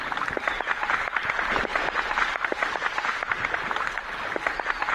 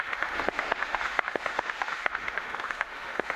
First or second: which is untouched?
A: first